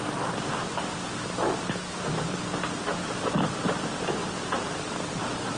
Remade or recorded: recorded